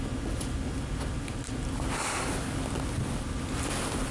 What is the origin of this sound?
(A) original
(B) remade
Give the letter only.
A